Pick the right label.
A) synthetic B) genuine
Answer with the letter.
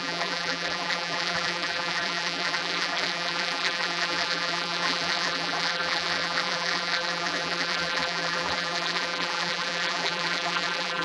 A